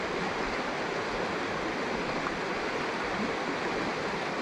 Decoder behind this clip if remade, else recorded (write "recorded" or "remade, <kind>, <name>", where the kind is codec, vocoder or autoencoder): recorded